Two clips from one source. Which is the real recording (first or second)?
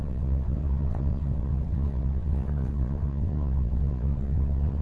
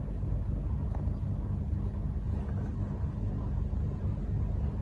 second